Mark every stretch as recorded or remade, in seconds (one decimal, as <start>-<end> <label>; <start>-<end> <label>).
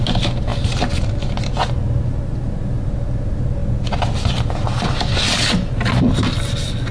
0.0-6.9 recorded